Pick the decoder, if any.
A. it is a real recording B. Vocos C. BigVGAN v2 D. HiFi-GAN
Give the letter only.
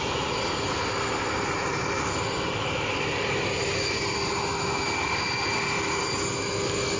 A